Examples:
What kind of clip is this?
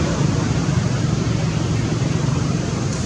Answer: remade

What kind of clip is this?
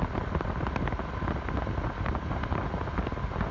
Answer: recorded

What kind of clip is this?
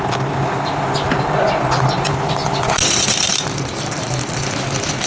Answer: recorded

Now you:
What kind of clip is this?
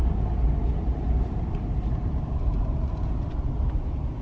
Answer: remade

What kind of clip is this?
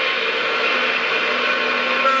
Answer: recorded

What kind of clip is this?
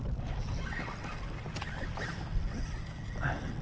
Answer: recorded